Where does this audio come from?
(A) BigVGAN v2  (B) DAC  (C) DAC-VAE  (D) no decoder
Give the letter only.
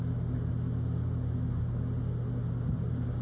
D